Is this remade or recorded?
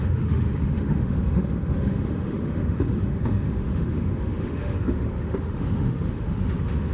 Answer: remade